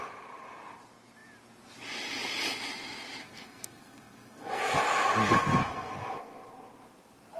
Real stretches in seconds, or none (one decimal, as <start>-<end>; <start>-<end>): 0.0-3.2; 4.8-5.2; 6.5-7.4